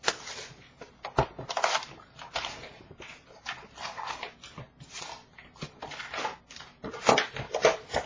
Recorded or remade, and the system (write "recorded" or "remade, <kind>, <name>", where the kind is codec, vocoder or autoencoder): recorded